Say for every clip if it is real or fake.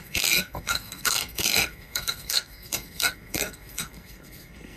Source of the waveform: fake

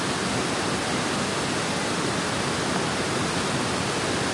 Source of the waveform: real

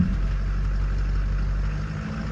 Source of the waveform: real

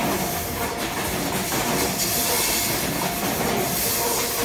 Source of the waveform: real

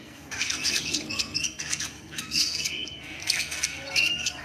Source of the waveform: fake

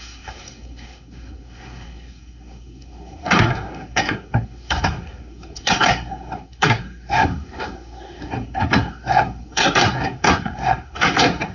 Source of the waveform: fake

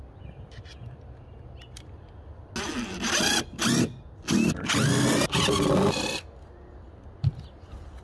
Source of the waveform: real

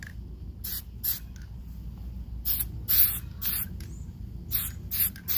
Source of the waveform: real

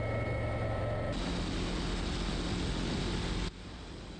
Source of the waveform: real